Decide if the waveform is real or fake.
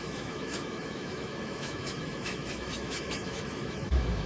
fake